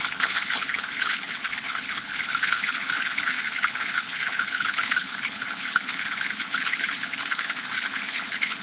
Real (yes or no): no